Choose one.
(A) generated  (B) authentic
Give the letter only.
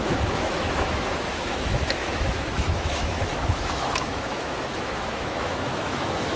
A